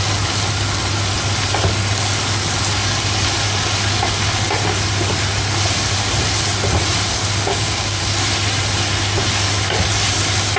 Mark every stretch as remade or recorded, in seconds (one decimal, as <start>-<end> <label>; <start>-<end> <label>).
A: 0.0-7.5 recorded; 7.5-8.0 remade; 8.0-10.6 recorded